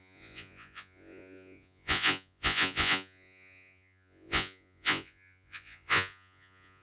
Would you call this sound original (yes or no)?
no